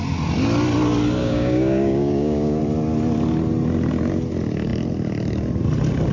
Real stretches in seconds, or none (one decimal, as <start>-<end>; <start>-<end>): 0.0-1.2; 2.6-6.1